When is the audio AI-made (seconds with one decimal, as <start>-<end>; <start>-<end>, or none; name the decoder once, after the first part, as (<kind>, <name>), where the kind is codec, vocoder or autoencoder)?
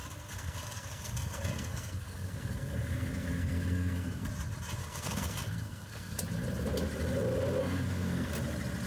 0.0-4.3 (codec, SNAC); 4.8-6.2; 7.6-8.3